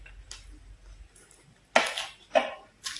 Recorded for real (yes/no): yes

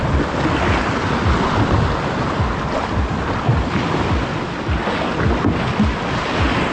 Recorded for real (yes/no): yes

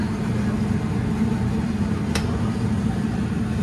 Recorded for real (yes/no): yes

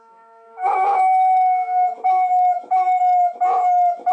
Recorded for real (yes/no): no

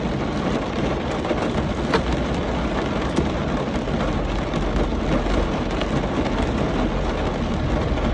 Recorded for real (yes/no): yes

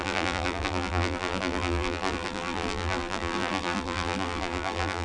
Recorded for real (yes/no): no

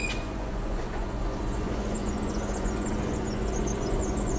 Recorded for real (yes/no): no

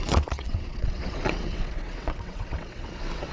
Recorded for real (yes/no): no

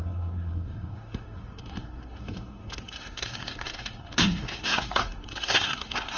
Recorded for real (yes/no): no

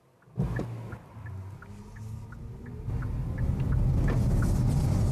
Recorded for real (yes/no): yes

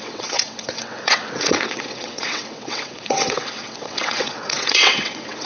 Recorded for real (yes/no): no